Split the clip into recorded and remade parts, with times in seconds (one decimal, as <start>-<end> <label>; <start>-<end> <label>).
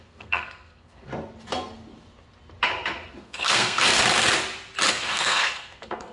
0.0-1.1 remade; 1.1-3.2 recorded; 3.2-3.9 remade; 3.9-4.9 recorded; 4.9-6.1 remade